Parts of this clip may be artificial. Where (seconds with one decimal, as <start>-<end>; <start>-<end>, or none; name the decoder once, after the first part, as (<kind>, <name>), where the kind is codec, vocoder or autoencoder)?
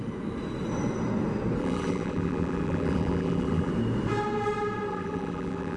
1.6-3.7 (vocoder, BigVGAN v2); 4.9-5.8